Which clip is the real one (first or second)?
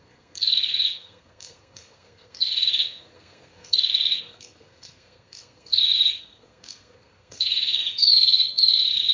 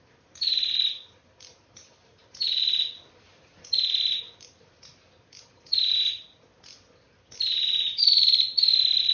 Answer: second